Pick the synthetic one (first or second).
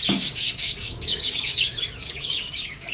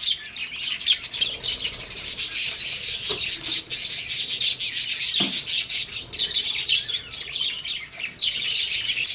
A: first